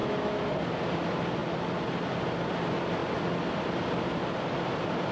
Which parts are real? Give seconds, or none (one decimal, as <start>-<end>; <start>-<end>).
0.5-5.1